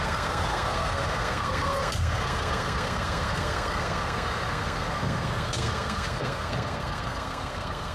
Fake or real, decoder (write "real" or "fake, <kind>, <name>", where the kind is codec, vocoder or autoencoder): fake, codec, SNAC